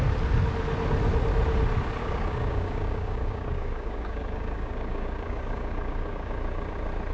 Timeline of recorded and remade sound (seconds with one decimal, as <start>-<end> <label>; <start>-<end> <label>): 0.0-2.0 recorded; 2.0-6.3 remade; 6.3-7.1 recorded